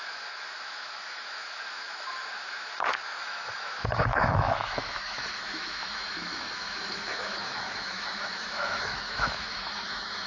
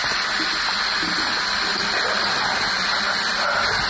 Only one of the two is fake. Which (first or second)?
first